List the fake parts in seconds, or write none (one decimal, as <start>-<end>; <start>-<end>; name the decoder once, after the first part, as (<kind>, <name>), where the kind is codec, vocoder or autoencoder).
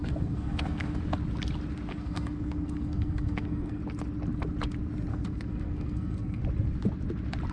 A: 0.0-1.0 (codec, SNAC); 1.9-3.8; 5.1-6.4